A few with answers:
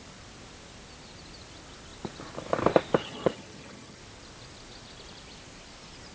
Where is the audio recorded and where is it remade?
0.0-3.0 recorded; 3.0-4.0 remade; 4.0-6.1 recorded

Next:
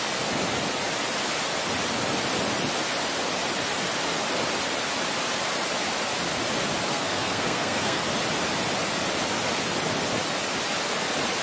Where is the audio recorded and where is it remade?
0.0-6.9 recorded; 6.9-8.0 remade; 8.0-11.4 recorded

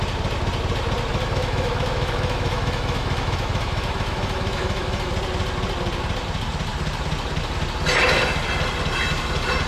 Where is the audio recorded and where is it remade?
0.0-1.1 recorded; 1.1-5.1 remade; 5.1-9.7 recorded

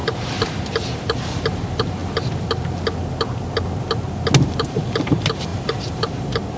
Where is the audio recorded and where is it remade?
0.0-2.0 remade; 2.0-4.4 recorded; 4.4-6.6 remade

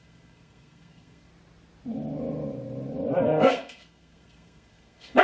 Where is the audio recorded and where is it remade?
0.0-1.3 remade; 1.3-3.2 recorded; 3.2-5.2 remade

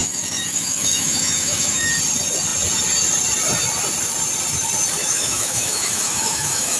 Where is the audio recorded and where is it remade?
0.0-1.9 remade; 1.9-5.0 recorded; 5.0-6.8 remade

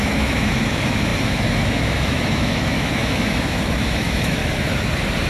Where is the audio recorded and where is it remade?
0.0-4.4 remade; 4.4-5.3 recorded

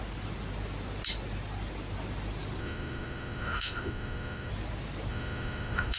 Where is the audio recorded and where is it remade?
0.0-2.6 recorded; 2.6-4.5 remade; 4.5-5.1 recorded; 5.1-6.0 remade